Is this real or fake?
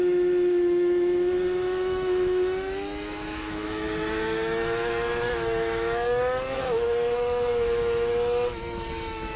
fake